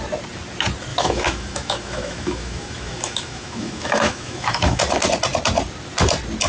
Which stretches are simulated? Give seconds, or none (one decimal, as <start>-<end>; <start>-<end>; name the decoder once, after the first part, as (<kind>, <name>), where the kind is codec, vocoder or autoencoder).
0.9-4.8 (autoencoder, DAC-VAE)